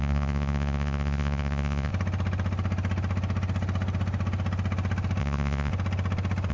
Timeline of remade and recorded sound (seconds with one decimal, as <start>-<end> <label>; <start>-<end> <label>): 0.0-1.9 remade; 1.9-5.2 recorded; 5.2-5.7 remade; 5.7-6.5 recorded